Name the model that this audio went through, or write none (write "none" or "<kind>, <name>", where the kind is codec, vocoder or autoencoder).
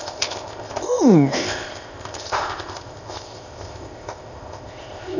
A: codec, ZipCodec